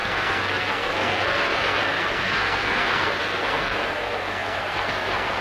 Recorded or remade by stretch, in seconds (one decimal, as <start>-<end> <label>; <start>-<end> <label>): 0.0-5.4 remade